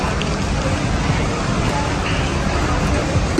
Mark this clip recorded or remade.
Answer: recorded